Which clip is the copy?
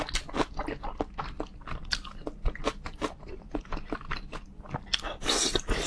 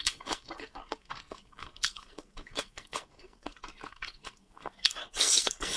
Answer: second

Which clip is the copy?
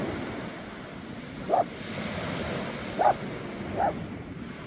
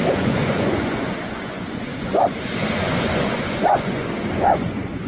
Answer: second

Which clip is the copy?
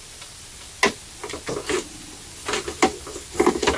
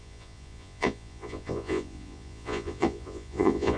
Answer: second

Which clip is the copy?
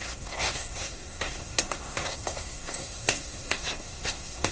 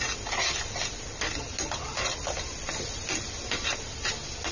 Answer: first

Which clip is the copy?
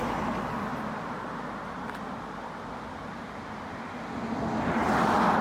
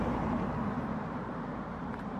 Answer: second